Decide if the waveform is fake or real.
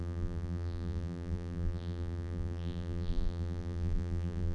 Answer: fake